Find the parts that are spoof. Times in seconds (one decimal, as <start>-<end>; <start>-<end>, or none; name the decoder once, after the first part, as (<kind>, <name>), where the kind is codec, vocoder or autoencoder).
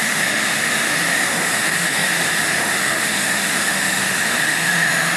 0.0-5.2 (autoencoder, DAC-VAE)